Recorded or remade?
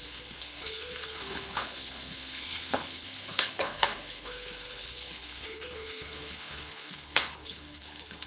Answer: remade